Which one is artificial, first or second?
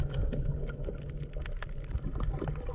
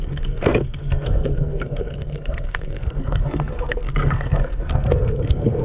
second